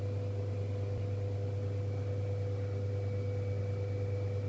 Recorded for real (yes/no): yes